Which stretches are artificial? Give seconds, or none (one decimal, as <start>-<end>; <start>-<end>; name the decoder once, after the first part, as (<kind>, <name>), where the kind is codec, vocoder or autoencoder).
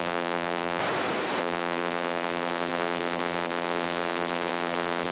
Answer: 0.0-0.8 (vocoder, BigVGAN v2); 1.4-5.1